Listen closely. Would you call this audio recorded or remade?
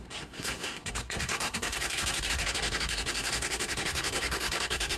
remade